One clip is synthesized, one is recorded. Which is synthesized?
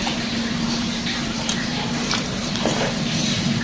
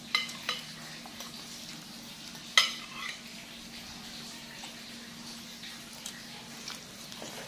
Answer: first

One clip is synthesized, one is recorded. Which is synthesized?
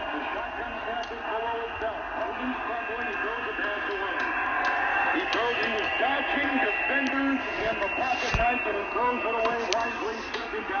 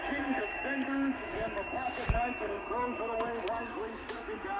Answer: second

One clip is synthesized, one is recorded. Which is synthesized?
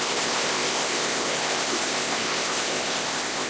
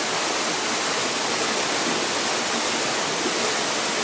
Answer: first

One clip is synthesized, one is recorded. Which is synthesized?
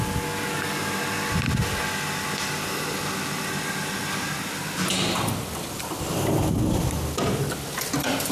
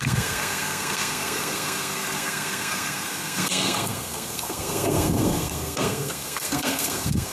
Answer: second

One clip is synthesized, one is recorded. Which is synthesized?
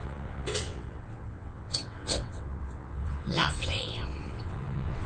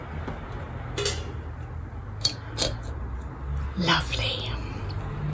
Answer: first